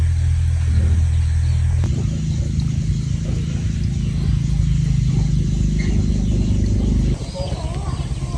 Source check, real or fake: real